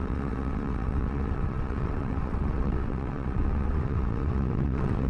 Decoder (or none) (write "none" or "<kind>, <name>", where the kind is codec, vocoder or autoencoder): vocoder, WaveNeXt